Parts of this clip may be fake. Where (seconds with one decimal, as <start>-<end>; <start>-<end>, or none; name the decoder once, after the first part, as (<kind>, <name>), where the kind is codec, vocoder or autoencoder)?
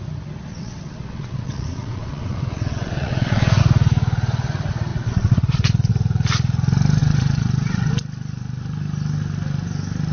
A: 0.5-3.6 (vocoder, WaveNeXt); 4.9-5.9; 7.0-7.9